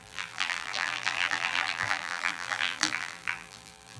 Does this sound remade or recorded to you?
remade